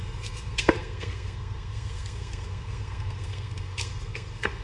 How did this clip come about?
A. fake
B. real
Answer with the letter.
A